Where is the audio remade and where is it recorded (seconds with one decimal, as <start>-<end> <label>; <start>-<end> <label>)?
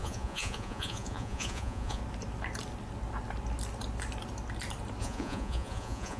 0.0-2.0 remade; 2.0-5.0 recorded; 5.0-6.2 remade